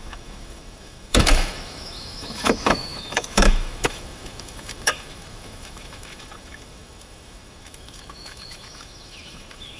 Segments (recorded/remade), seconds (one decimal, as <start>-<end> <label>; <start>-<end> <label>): 0.0-9.8 remade